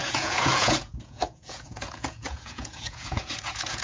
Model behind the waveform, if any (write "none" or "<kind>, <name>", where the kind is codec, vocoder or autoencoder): vocoder, Vocos